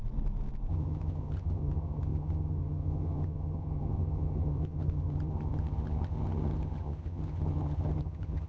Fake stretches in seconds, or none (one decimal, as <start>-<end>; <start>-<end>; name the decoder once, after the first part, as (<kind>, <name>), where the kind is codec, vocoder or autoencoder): 0.7-8.5 (vocoder, HiFi-GAN)